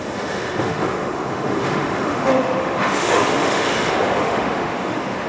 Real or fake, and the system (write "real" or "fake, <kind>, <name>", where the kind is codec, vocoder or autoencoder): fake, autoencoder, DAC-VAE